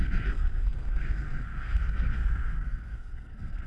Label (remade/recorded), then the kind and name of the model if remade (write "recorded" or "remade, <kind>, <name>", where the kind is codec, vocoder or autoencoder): remade, codec, SNAC